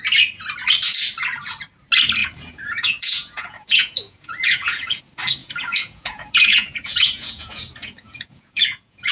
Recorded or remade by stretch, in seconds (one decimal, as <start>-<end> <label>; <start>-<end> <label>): 0.0-2.2 recorded; 2.2-5.0 remade; 5.0-5.4 recorded; 5.4-9.1 remade